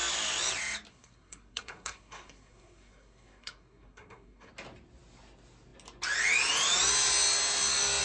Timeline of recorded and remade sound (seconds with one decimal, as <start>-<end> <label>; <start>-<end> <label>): 0.0-0.9 recorded; 0.9-4.5 remade; 4.5-8.0 recorded